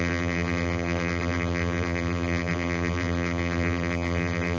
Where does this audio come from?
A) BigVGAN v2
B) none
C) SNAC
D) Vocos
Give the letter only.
A